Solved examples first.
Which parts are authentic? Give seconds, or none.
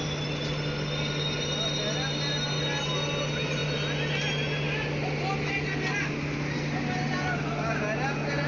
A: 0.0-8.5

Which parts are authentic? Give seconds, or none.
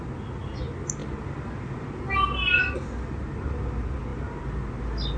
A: 0.0-5.2